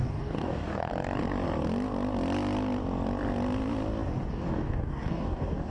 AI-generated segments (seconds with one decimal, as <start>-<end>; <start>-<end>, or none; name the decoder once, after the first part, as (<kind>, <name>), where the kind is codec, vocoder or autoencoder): 0.0-0.9 (codec, DAC); 4.3-5.7